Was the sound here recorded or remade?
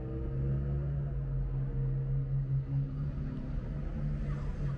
recorded